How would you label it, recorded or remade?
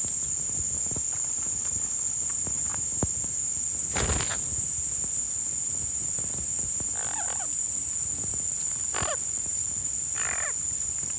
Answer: recorded